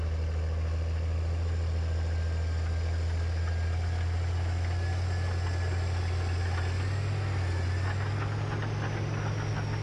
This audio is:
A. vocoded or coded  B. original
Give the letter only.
B